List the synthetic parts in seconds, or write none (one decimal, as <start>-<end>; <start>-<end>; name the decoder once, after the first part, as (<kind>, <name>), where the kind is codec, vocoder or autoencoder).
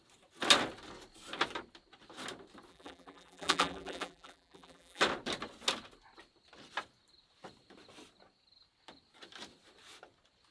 2.7-5.0 (vocoder, BigVGAN v2)